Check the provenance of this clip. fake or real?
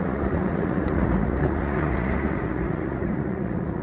fake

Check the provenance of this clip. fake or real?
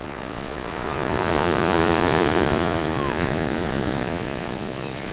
fake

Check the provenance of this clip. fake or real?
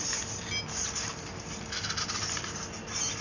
real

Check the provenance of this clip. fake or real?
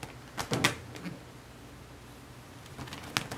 real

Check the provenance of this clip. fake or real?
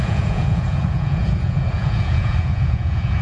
fake